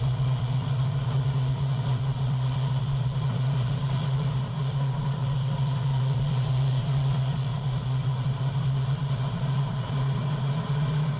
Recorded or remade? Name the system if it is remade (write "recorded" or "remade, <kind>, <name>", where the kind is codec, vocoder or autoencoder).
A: remade, vocoder, Vocos